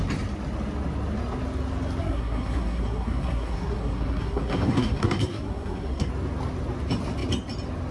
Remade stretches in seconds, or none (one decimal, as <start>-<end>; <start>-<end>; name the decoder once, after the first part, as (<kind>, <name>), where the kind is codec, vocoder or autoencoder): 2.0-6.1 (codec, SNAC)